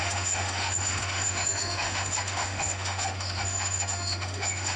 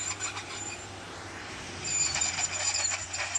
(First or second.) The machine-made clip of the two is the first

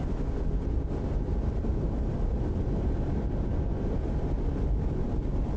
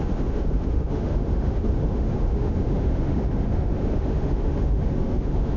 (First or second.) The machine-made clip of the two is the second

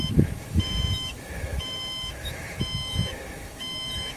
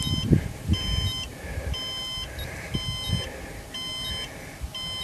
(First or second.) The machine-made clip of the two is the first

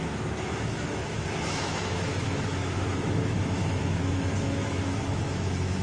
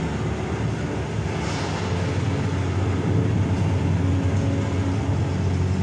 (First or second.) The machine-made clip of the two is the first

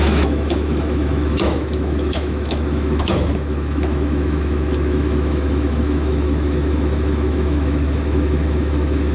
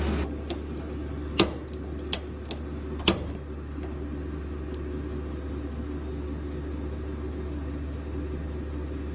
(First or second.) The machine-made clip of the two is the first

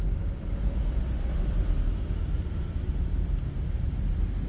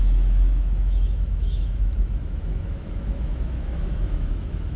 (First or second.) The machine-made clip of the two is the second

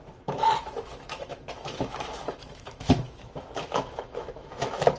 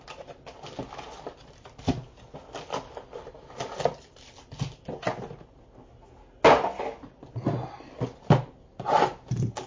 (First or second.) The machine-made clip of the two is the first